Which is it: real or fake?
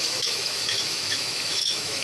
fake